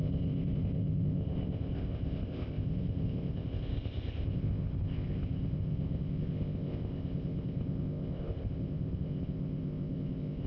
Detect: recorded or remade remade